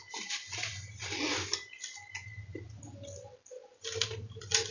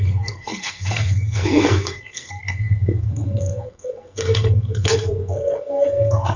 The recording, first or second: first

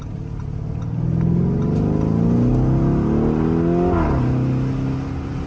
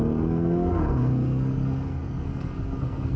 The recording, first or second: first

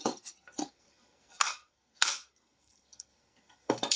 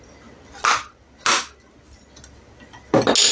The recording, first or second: second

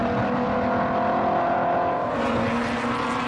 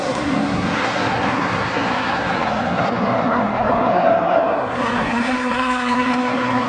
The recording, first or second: first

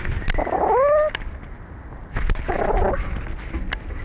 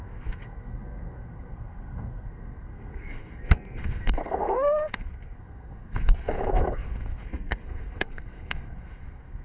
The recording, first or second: first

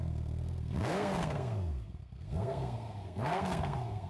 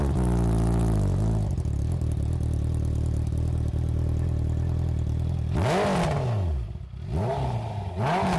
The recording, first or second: second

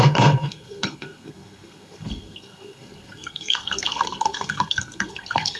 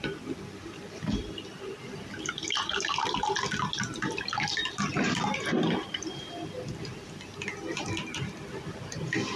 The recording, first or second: second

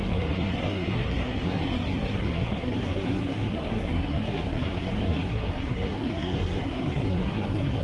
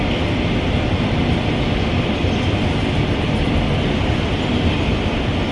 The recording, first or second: second